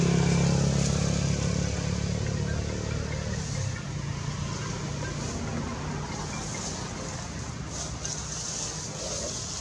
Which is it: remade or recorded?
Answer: recorded